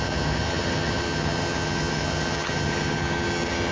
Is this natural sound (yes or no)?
no